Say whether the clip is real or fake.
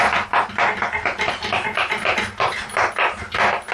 real